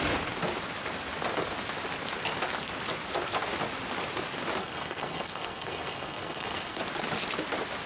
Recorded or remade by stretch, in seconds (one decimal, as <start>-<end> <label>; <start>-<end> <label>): 0.0-4.6 recorded; 4.6-6.8 remade; 6.8-7.9 recorded